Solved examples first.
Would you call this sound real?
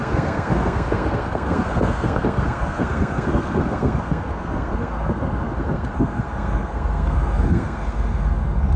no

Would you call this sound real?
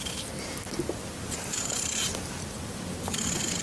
yes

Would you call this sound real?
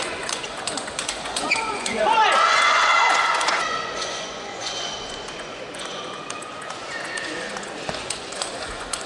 no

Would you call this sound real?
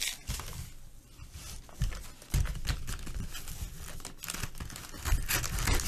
yes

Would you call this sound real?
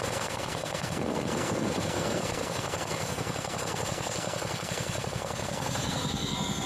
no